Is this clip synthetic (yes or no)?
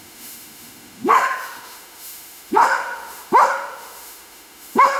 yes